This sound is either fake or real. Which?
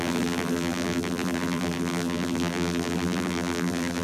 fake